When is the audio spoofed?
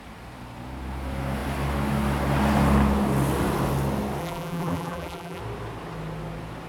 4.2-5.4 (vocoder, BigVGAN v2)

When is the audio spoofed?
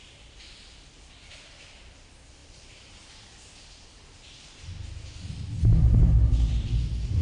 0.0-7.2 (vocoder, BigVGAN v2)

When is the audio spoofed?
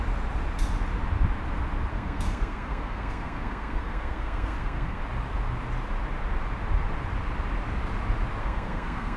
1.9-5.0 (codec, SNAC); 8.4-9.2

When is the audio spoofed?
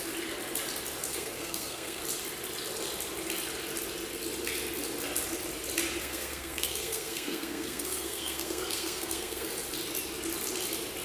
1.1-2.0 (codec, SNAC); 6.0-9.5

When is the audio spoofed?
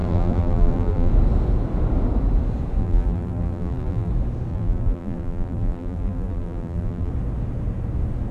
0.0-1.1 (vocoder, BigVGAN v2); 2.8-4.1; 4.5-7.1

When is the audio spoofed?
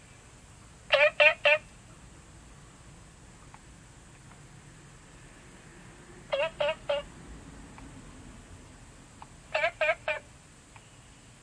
none